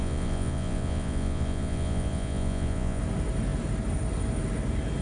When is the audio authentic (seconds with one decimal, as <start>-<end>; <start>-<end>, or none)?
3.0-5.0